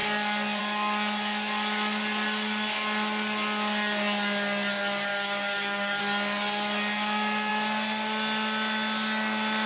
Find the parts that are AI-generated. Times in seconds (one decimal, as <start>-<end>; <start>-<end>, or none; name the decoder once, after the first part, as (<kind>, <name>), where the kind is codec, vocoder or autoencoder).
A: 5.1-6.0 (codec, DAC)